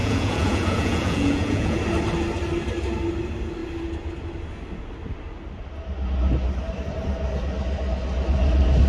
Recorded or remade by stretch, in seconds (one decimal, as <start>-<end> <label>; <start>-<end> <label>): 0.0-1.8 remade; 1.8-8.9 recorded